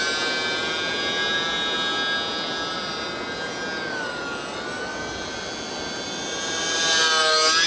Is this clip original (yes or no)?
yes